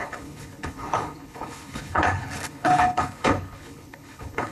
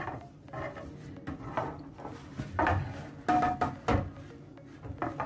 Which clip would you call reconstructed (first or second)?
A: first